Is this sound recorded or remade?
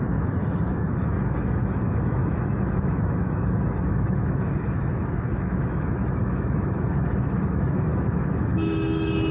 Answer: remade